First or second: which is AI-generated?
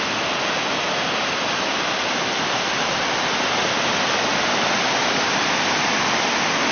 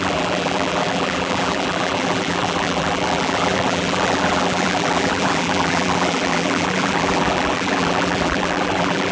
second